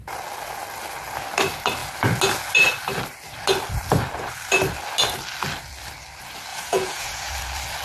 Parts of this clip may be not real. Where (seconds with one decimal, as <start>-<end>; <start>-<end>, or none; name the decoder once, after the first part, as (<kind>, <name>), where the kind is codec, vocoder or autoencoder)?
6.5-7.3 (vocoder, Vocos)